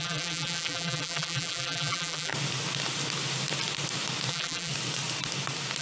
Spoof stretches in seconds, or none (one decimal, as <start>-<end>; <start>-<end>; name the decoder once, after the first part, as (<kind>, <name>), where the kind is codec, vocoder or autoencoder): 0.0-2.3 (vocoder, BigVGAN v2); 4.3-4.7